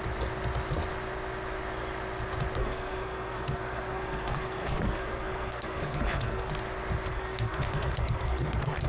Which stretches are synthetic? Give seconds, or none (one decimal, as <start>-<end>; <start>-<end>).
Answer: 2.6-6.5; 7.1-8.9